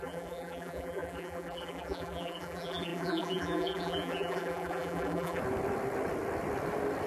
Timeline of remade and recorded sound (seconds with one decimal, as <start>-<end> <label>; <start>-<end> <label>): 0.0-5.4 remade; 5.4-7.1 recorded